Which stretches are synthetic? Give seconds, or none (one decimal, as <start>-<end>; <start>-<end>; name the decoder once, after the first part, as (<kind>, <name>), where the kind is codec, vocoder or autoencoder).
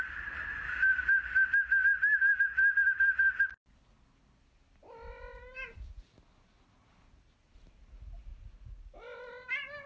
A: 8.3-8.8 (vocoder, Vocos)